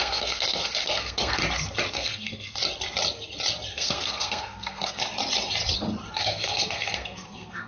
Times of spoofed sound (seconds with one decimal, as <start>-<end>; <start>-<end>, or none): 0.0-1.4; 1.9-2.6; 3.7-5.0; 6.1-7.7